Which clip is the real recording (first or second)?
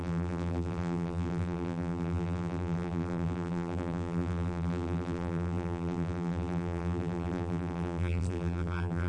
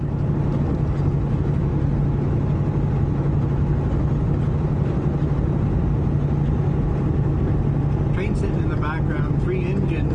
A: second